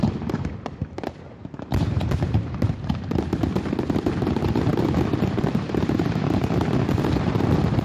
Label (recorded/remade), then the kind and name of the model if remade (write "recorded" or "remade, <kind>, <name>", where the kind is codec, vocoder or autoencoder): remade, vocoder, BigVGAN v2